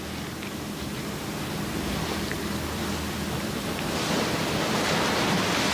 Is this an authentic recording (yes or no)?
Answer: yes